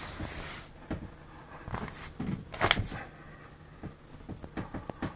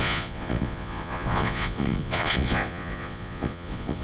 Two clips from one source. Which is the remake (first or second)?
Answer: second